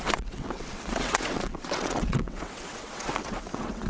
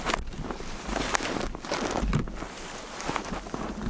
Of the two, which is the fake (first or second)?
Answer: first